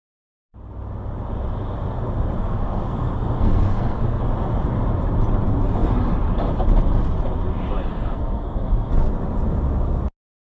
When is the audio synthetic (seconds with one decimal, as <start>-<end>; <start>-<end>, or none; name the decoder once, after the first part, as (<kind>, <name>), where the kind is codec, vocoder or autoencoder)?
2.4-4.2 (codec, SNAC); 7.9-8.9